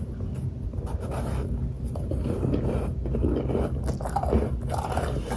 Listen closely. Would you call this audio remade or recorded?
recorded